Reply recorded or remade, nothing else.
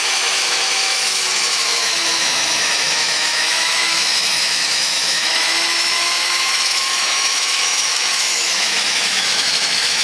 remade